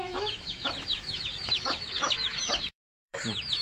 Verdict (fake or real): fake